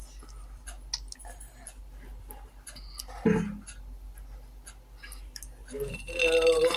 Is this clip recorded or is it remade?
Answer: recorded